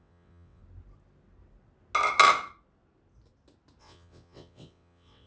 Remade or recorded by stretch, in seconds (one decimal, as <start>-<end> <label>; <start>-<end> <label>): 0.0-0.6 remade; 0.6-3.8 recorded; 3.8-5.3 remade